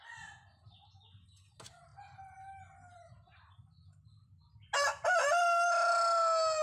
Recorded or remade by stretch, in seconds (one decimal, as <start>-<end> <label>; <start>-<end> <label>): 0.0-6.6 recorded